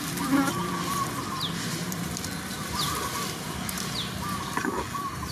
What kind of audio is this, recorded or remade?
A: recorded